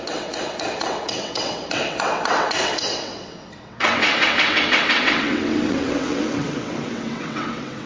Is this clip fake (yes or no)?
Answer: yes